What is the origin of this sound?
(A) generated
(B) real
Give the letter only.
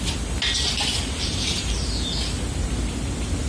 B